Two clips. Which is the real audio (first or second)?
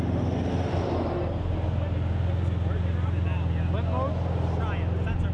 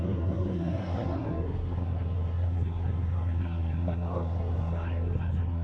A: first